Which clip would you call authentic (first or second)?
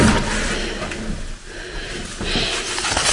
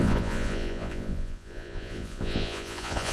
first